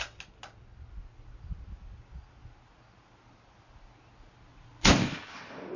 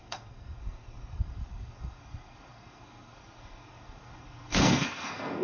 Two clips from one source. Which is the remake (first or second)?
second